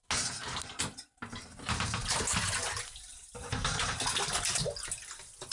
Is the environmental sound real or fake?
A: real